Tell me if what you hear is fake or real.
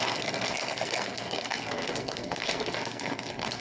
fake